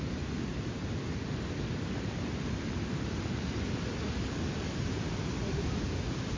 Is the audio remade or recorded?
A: recorded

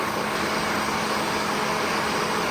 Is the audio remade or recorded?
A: remade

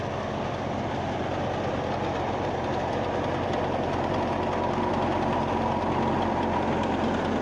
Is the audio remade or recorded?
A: recorded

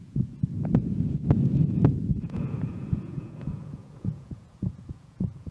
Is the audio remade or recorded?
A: remade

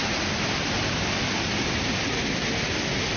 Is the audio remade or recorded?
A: recorded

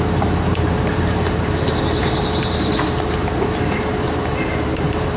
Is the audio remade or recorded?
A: remade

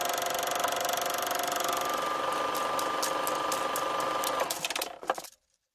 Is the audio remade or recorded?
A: recorded